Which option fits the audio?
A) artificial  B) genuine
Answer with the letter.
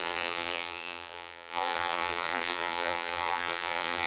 A